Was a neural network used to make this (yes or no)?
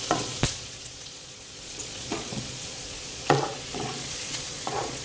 yes